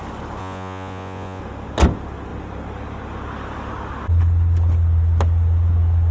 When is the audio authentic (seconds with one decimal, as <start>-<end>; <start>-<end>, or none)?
0.0-0.4; 1.4-6.1